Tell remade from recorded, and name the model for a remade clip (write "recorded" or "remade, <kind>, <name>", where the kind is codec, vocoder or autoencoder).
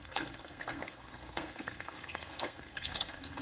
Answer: remade, codec, SNAC